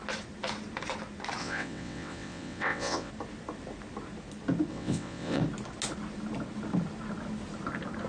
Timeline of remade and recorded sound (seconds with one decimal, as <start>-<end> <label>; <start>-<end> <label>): 0.0-1.4 recorded; 1.4-3.1 remade; 3.1-4.7 recorded; 4.7-5.4 remade; 5.4-8.1 recorded